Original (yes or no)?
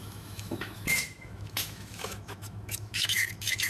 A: no